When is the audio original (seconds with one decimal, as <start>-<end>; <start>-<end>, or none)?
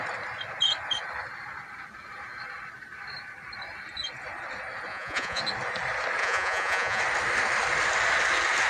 0.0-4.9; 5.4-6.2; 7.0-8.7